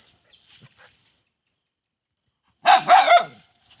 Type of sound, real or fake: fake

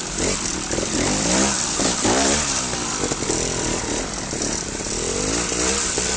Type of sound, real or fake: fake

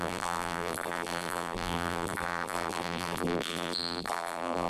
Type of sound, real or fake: fake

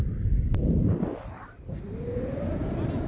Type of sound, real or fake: real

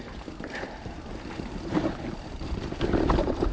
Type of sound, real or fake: fake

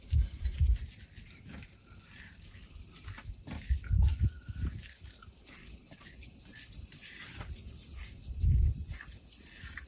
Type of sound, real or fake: real